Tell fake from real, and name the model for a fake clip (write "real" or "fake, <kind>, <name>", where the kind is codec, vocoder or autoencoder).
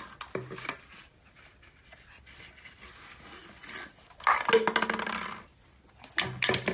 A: real